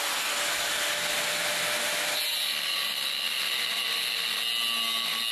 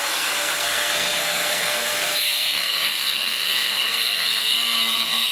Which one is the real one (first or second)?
first